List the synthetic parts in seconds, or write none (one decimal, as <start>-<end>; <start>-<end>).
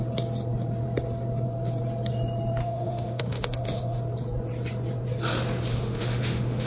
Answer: 2.6-4.0; 5.7-6.7